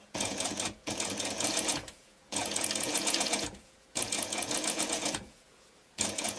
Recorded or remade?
remade